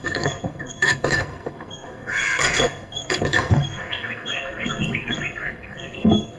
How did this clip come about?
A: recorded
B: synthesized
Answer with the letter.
B